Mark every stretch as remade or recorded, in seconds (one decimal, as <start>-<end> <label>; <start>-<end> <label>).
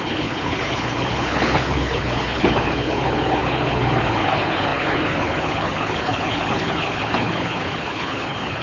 0.0-8.6 remade